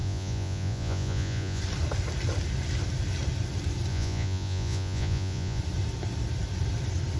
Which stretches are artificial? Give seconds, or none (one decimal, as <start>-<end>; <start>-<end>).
0.0-1.6; 3.9-5.6